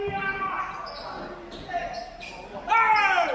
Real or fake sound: real